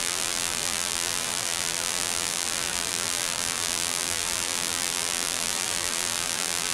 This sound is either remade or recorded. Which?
remade